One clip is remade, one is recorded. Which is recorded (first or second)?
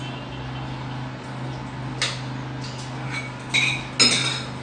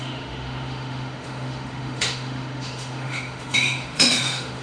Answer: first